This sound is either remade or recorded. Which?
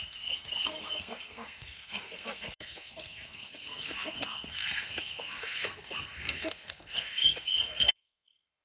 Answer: remade